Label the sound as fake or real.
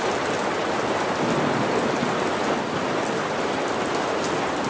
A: real